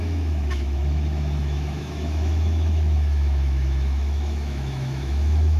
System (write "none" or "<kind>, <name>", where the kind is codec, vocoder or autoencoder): autoencoder, DAC-VAE